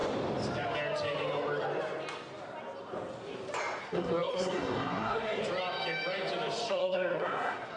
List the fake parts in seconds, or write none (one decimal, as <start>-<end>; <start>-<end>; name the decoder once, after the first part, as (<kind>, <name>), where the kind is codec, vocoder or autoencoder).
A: 3.8-5.4 (codec, SNAC); 6.7-7.8